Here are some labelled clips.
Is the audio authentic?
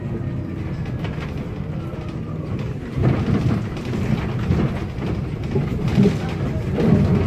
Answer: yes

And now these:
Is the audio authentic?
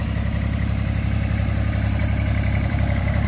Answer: no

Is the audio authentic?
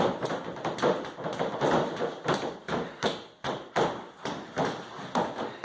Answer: no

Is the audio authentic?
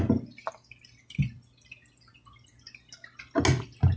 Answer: yes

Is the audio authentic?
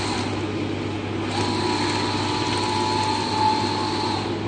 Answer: yes